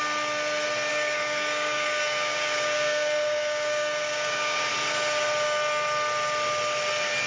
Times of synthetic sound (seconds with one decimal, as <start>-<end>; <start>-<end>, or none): 0.9-4.7